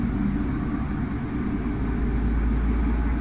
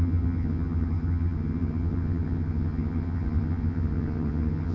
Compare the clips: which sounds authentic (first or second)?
first